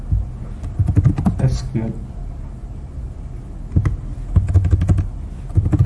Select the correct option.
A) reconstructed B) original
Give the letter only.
B